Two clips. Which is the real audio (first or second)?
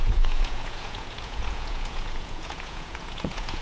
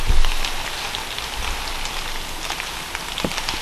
second